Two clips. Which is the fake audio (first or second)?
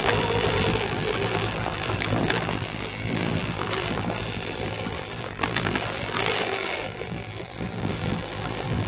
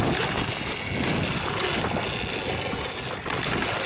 first